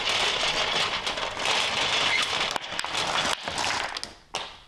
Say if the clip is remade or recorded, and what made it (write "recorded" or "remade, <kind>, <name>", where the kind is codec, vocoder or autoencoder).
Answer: recorded